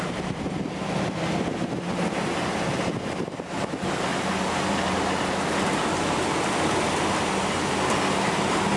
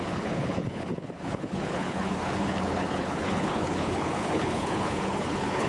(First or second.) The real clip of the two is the first